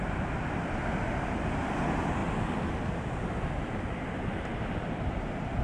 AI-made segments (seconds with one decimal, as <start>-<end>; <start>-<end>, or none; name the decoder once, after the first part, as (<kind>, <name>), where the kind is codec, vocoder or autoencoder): none

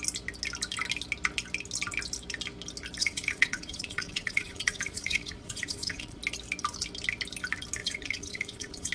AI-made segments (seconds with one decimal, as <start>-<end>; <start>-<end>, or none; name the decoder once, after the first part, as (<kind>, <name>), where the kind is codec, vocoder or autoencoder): 3.0-6.2 (vocoder, Vocos); 7.8-8.9

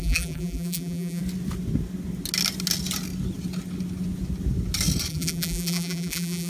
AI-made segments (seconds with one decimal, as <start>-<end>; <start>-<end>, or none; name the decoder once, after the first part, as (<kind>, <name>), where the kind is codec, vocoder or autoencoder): 0.0-1.2 (vocoder, BigVGAN v2); 5.1-6.5

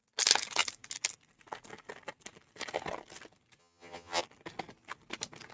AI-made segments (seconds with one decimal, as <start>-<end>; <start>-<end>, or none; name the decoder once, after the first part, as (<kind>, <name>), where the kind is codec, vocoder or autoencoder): 3.6-4.2 (vocoder, HiFi-GAN)

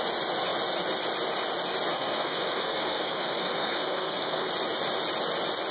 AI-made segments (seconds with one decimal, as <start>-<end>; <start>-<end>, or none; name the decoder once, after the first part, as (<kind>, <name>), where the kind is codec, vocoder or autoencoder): 1.9-4.5 (codec, SNAC)

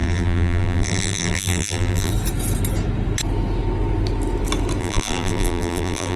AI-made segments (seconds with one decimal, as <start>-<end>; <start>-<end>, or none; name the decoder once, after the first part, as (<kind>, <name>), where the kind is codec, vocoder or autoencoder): 0.0-2.1 (vocoder, BigVGAN v2); 4.8-6.2

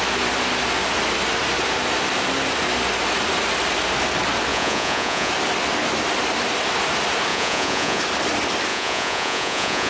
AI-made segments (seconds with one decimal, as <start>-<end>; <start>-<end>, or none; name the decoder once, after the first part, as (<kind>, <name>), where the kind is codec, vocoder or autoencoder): 4.5-5.3 (vocoder, Vocos); 7.3-8.0; 8.7-9.9

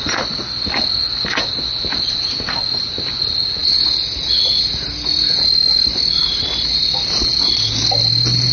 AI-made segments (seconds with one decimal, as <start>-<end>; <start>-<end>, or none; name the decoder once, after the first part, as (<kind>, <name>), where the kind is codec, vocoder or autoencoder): none